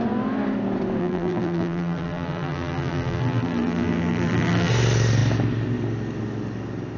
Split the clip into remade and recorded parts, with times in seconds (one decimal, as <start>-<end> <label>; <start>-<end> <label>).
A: 0.0-1.0 recorded; 1.0-4.7 remade; 4.7-7.0 recorded